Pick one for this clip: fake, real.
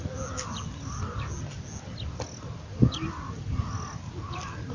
real